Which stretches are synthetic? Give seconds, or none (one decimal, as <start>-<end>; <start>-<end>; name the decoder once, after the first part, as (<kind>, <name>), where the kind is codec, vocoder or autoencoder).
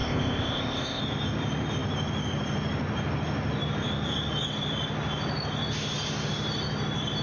0.0-1.0 (codec, ZipCodec)